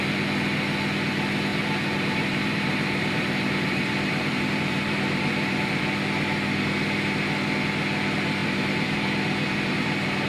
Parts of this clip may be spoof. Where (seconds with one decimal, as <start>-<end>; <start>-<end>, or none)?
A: 1.5-5.8; 8.4-10.3